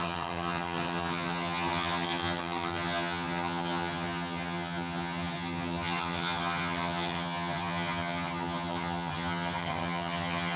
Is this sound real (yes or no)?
no